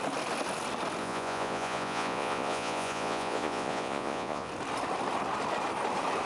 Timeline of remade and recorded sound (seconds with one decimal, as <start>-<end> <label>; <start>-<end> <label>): 0.0-1.0 recorded; 1.0-4.5 remade; 4.5-6.3 recorded